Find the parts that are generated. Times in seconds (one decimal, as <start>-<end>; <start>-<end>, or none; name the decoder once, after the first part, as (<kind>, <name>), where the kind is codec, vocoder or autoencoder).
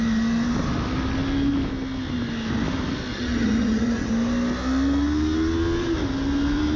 3.1-4.1 (vocoder, HiFi-GAN)